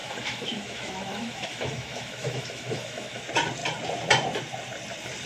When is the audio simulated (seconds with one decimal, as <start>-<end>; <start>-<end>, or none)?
0.0-3.2